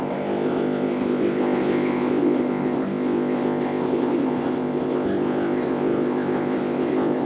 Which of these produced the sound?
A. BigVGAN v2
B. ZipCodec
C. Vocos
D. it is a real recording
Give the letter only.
B